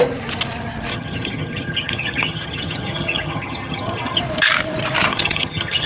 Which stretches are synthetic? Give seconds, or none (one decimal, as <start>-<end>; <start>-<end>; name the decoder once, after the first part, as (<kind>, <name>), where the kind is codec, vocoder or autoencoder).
0.9-4.2 (vocoder, HiFi-GAN); 5.1-5.9